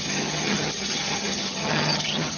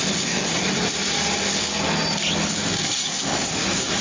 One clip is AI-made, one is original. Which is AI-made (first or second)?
first